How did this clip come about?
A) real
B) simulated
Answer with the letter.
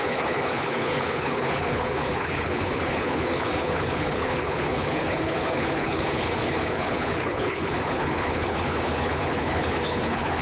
B